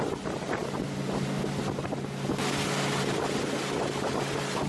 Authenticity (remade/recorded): recorded